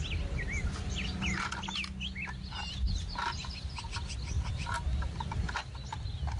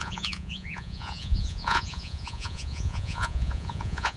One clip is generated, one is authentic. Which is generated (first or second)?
second